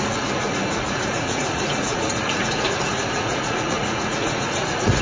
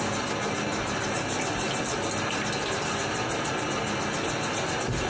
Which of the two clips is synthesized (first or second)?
first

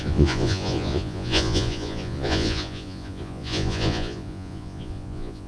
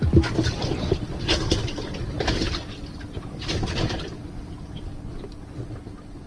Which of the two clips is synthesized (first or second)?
first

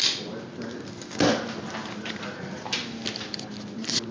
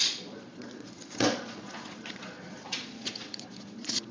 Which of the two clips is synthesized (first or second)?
second